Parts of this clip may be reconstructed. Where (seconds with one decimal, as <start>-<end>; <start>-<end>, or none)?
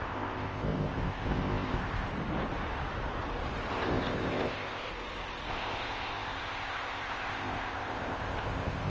0.0-2.1; 3.7-4.9; 5.5-8.9